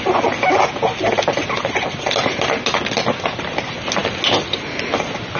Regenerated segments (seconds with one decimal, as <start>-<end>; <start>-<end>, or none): none